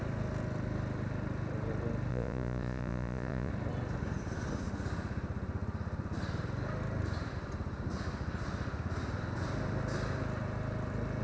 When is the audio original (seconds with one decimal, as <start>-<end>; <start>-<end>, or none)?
0.0-2.1; 3.5-11.2